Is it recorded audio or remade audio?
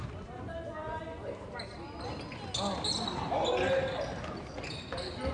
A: recorded